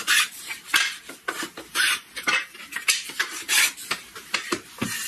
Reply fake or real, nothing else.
fake